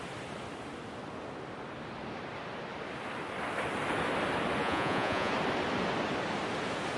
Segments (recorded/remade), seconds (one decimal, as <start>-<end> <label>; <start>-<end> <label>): 0.0-4.6 recorded; 4.6-5.3 remade; 5.3-7.0 recorded